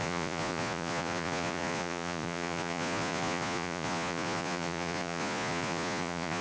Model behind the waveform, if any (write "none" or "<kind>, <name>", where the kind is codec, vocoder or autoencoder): vocoder, Vocos